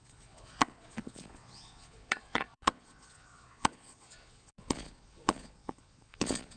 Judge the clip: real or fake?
fake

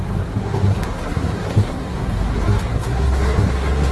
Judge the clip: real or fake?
fake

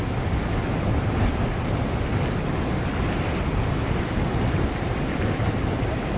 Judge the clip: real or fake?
real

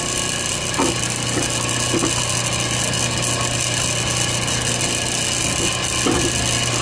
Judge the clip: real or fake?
real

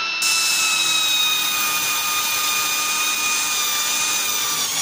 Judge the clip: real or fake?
real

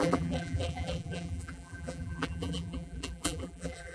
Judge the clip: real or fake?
fake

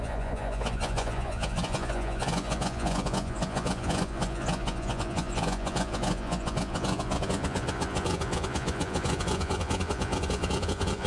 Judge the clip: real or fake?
fake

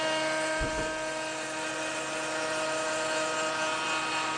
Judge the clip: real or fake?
real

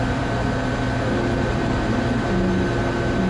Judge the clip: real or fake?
real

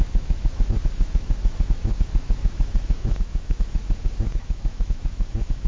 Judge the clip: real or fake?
fake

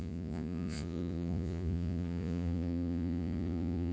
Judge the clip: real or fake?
fake